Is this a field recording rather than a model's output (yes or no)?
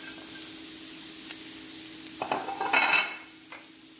yes